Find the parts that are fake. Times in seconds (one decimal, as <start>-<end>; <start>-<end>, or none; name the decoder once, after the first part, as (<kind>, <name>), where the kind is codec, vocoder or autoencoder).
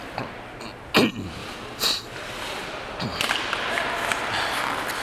1.4-3.2 (vocoder, BigVGAN v2)